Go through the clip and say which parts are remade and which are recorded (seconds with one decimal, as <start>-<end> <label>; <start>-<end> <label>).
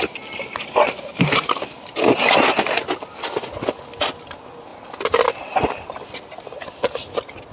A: 0.0-4.7 recorded; 4.7-5.4 remade; 5.4-7.5 recorded